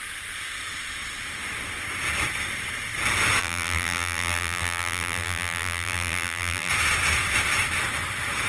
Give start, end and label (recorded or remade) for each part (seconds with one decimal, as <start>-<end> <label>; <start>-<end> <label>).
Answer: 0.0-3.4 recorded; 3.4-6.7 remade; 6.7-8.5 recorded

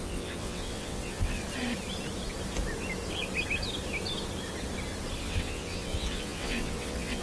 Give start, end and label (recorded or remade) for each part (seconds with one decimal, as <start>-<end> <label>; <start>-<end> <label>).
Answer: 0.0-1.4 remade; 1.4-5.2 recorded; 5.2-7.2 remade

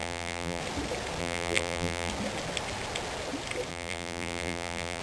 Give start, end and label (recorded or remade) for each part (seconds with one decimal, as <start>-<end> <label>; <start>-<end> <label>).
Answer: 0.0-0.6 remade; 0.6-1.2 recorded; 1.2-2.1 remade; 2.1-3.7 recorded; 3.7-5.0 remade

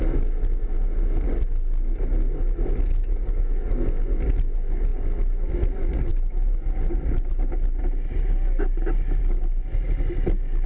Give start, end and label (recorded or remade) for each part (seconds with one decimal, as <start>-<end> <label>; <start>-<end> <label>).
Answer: 0.0-10.7 recorded

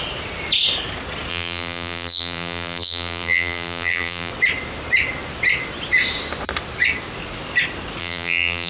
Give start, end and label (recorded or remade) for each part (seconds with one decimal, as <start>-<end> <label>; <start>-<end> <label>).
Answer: 0.0-1.3 recorded; 1.3-4.3 remade; 4.3-8.0 recorded; 8.0-8.7 remade

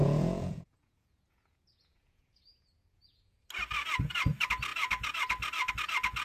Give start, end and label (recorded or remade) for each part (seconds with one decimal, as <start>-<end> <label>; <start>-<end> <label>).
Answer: 0.0-3.4 remade; 3.4-6.2 recorded